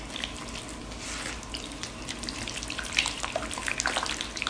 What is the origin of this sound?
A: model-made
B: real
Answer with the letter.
B